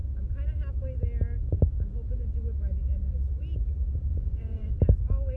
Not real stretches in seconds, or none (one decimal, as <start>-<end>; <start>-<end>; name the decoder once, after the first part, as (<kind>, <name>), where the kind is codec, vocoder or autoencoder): 4.1-4.7 (vocoder, Vocos)